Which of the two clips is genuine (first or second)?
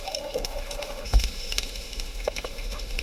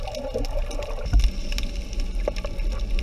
second